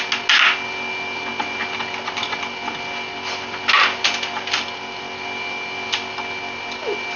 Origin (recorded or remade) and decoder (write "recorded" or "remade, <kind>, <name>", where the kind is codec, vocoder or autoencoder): recorded